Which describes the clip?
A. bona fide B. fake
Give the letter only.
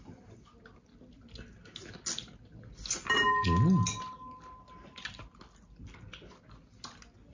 A